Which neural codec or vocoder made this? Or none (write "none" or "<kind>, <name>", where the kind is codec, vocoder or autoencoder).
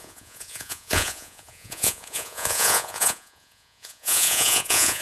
vocoder, Vocos